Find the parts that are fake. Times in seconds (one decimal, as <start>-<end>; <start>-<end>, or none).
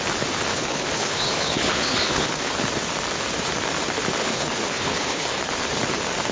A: 0.5-2.5; 4.2-5.4